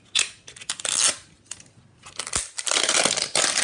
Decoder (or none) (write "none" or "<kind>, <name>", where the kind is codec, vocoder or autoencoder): none